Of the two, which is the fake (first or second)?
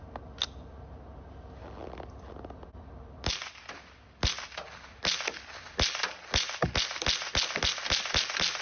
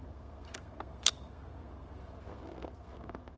second